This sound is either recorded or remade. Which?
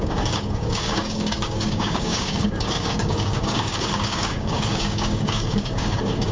remade